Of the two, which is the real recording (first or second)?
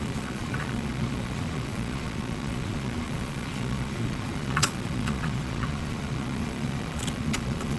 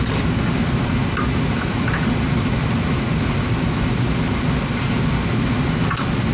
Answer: second